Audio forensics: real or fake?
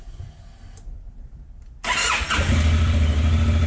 real